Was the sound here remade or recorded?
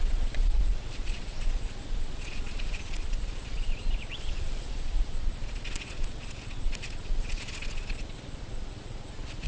remade